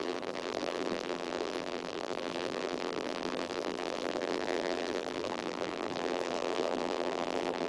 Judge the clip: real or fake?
fake